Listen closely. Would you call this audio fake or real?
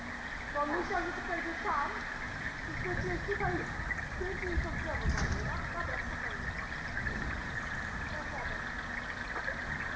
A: real